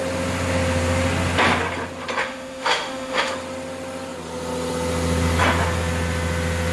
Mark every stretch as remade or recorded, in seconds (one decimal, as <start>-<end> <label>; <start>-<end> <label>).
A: 0.0-2.2 recorded; 2.2-3.3 remade; 3.3-6.7 recorded